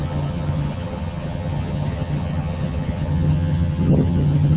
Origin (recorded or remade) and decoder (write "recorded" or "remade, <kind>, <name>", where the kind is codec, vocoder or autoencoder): remade, vocoder, HiFi-GAN